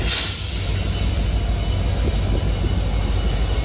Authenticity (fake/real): real